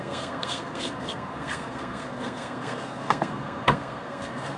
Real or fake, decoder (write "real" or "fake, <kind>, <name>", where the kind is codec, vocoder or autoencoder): fake, codec, SNAC